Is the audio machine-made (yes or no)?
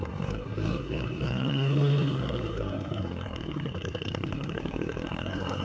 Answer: yes